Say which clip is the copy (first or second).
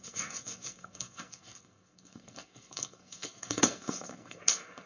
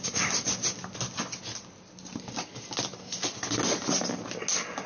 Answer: first